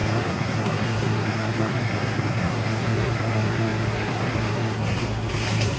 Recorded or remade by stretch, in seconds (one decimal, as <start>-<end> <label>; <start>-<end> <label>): 0.0-5.8 remade